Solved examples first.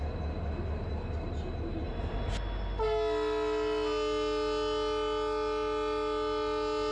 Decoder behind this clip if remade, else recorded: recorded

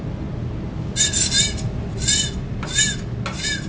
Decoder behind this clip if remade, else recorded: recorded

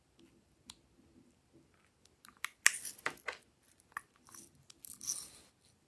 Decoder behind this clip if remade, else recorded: recorded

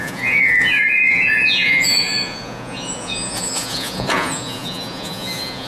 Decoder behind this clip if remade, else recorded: remade, vocoder, Vocos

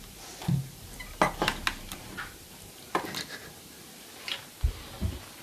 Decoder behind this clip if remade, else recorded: recorded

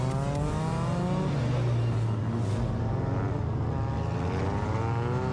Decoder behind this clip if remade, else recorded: recorded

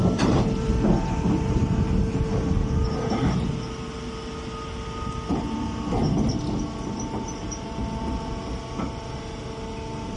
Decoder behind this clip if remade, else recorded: recorded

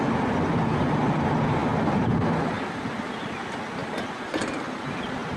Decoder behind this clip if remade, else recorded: recorded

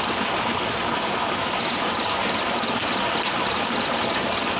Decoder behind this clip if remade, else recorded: recorded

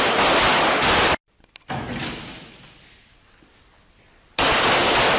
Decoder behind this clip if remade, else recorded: recorded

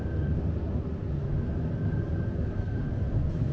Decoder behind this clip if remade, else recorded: recorded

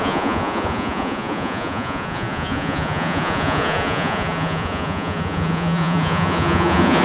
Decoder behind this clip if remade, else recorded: remade, vocoder, Vocos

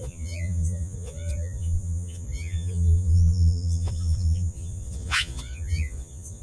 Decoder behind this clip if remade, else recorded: remade, vocoder, Vocos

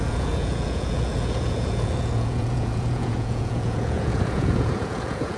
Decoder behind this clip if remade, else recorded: remade, vocoder, Vocos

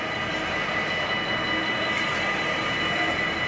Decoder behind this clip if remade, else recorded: recorded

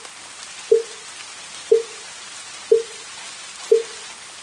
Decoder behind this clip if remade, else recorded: recorded